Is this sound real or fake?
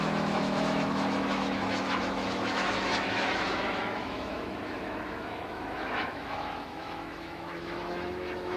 fake